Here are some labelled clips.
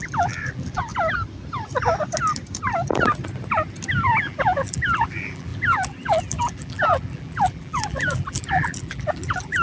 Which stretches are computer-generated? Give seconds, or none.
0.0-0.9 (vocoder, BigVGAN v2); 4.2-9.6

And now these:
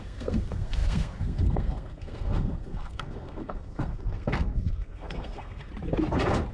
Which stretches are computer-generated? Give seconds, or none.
0.0-5.7 (codec, SNAC)

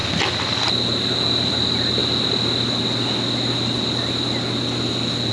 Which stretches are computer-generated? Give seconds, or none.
none

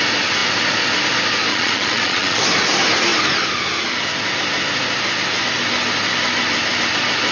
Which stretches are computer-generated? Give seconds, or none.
1.5-2.4 (vocoder, Vocos)

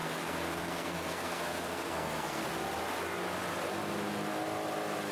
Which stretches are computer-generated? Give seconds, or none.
0.0-2.4 (codec, SNAC)

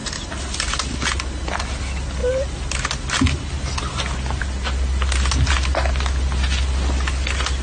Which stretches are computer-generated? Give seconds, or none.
none

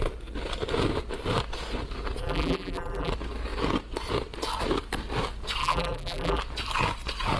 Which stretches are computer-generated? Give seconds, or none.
2.2-3.1 (vocoder, BigVGAN v2); 5.6-6.4

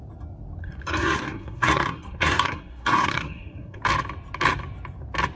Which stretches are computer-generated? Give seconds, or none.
0.6-3.8 (codec, SNAC)